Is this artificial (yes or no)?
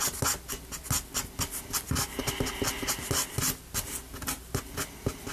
no